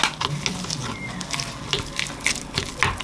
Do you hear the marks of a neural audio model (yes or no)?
no